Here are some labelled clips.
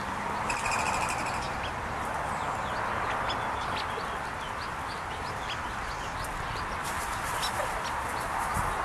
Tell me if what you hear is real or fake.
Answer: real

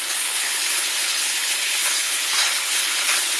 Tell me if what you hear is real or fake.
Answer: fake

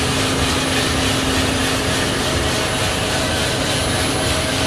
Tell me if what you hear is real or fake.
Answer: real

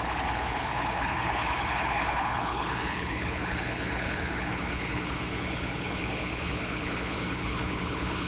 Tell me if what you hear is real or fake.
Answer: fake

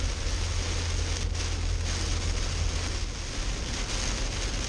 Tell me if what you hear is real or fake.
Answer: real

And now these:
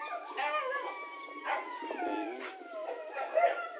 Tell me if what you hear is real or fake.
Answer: real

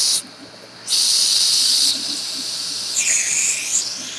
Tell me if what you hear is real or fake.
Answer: real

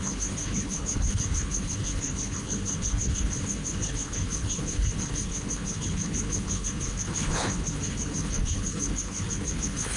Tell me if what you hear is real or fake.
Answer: fake